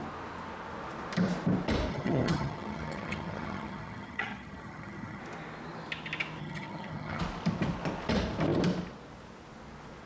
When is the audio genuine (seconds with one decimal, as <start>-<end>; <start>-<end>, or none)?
0.0-1.9; 5.2-6.4; 7.2-10.1